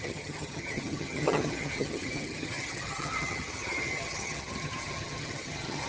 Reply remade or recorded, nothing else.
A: remade